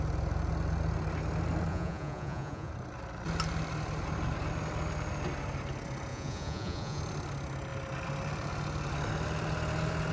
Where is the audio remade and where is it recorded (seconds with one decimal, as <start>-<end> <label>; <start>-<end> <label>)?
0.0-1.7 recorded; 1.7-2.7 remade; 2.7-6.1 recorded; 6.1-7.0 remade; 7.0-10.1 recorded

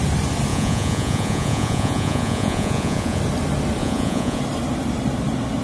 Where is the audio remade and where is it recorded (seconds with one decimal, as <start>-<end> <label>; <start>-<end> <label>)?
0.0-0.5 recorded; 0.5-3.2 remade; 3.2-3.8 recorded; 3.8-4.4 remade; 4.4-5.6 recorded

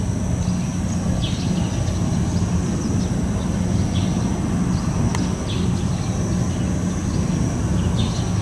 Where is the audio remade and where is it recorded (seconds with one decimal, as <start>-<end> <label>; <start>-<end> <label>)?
0.0-8.4 recorded